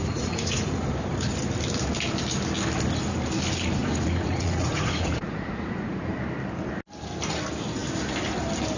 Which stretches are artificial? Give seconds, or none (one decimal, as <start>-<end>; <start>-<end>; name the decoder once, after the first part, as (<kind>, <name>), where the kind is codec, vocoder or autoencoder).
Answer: 0.0-0.9 (vocoder, Vocos); 3.8-6.1